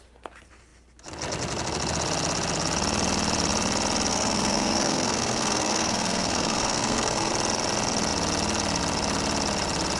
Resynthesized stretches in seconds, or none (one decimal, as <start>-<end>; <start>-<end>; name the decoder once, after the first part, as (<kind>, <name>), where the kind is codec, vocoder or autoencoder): 4.1-7.3 (codec, SNAC)